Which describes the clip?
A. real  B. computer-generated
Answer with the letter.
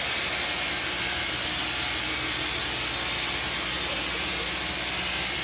A